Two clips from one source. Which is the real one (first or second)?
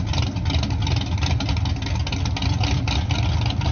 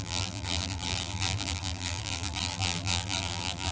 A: first